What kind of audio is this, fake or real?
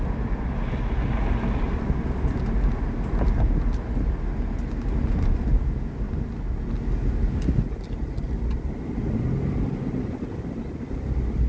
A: real